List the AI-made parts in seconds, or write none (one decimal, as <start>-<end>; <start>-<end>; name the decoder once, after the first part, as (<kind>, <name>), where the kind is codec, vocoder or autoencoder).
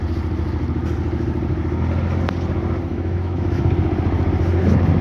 2.9-3.6 (autoencoder, DAC-VAE)